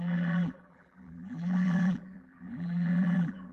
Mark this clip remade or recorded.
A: remade